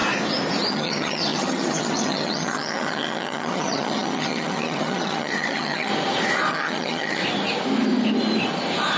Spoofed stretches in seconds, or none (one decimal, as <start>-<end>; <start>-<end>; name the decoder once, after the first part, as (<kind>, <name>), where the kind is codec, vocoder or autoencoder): 0.7-5.9 (vocoder, HiFi-GAN); 6.5-7.2